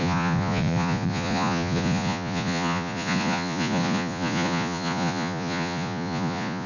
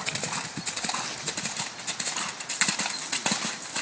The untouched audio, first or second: second